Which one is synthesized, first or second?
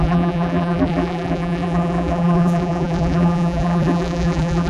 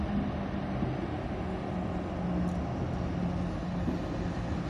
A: first